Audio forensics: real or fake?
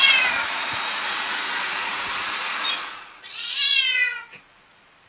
fake